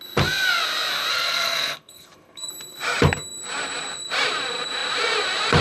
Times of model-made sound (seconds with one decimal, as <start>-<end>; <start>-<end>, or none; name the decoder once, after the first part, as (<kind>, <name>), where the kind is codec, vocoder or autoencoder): 1.1-2.5 (codec, SNAC)